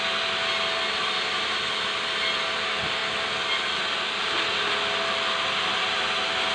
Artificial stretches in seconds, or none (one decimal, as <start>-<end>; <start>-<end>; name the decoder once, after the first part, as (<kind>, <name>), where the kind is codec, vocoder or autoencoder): none